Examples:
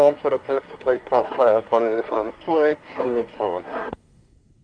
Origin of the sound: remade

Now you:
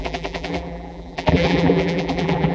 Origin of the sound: remade